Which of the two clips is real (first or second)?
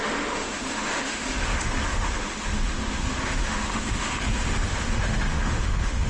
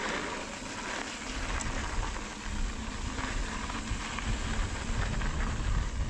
second